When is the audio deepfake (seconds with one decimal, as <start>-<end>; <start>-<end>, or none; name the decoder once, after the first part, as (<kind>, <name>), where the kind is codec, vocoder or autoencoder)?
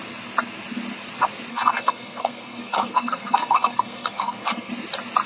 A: 1.5-4.7 (codec, SNAC)